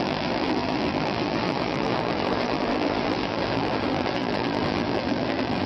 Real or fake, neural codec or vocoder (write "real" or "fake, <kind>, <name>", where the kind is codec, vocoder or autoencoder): fake, vocoder, BigVGAN v2